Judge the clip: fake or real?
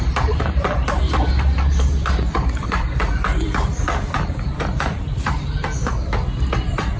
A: fake